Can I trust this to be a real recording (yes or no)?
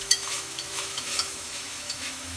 no